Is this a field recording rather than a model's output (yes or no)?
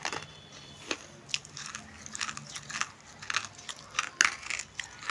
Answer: yes